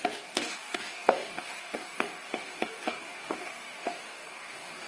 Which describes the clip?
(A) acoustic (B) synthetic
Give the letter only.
B